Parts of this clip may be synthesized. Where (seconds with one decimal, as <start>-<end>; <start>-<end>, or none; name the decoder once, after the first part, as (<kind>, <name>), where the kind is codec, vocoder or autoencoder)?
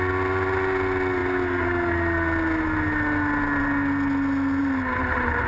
4.6-5.5 (vocoder, BigVGAN v2)